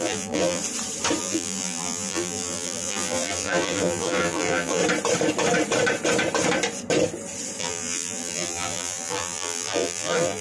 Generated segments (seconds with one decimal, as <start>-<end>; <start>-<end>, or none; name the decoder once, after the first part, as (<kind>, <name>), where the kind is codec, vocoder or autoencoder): 0.0-0.6 (vocoder, BigVGAN v2); 1.2-4.8; 7.6-10.4